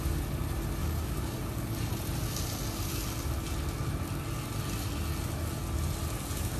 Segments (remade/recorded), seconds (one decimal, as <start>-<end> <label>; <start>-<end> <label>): 0.0-0.8 recorded; 0.8-1.9 remade; 1.9-6.6 recorded